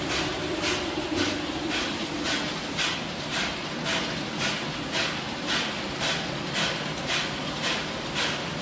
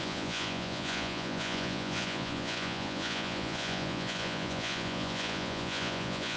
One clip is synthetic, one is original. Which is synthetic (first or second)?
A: second